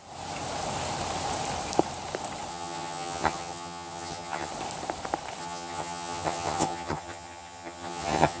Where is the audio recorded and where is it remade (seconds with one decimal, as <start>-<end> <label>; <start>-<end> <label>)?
0.0-2.5 recorded; 2.5-4.5 remade; 4.5-5.4 recorded; 5.4-8.4 remade